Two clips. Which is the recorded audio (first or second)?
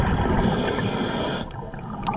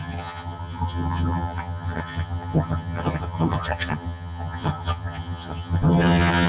first